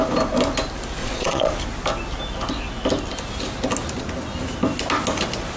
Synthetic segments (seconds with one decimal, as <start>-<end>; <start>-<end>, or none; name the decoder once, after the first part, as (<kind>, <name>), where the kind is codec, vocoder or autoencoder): 1.0-1.5 (vocoder, Vocos)